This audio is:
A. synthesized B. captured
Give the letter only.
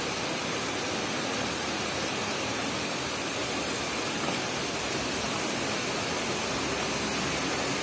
B